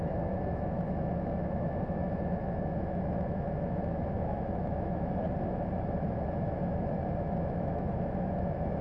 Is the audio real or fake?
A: fake